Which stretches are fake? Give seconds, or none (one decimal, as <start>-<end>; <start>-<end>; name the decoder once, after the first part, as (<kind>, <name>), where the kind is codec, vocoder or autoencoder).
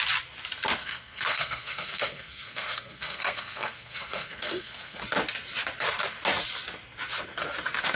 0.8-5.0 (codec, SNAC)